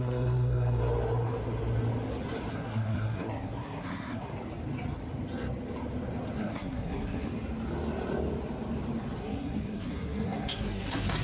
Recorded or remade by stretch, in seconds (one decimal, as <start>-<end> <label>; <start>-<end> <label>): 0.0-0.8 remade; 0.8-2.5 recorded; 2.5-4.3 remade; 4.3-6.4 recorded; 6.4-7.3 remade; 7.3-9.2 recorded; 9.2-11.2 remade